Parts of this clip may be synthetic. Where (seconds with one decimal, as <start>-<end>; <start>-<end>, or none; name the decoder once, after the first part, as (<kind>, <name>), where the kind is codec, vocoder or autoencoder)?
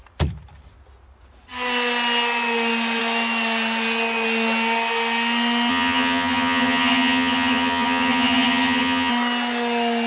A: 5.7-9.1 (vocoder, HiFi-GAN)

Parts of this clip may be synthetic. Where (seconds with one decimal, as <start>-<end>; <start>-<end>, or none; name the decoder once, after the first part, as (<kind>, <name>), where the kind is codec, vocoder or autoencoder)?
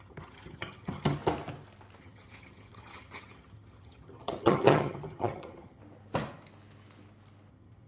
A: 0.0-1.2 (vocoder, HiFi-GAN); 2.0-5.8; 7.5-7.9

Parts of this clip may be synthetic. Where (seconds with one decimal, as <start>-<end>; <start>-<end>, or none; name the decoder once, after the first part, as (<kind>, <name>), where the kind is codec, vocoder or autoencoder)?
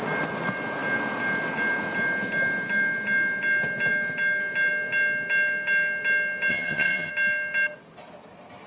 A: 6.5-7.1 (vocoder, HiFi-GAN)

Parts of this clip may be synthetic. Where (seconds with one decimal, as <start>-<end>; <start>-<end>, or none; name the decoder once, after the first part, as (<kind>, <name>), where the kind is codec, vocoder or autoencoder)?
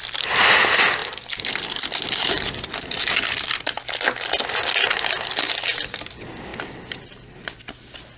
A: none